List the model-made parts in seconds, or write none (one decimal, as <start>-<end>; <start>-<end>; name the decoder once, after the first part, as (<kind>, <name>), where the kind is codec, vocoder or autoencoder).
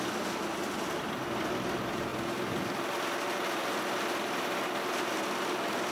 none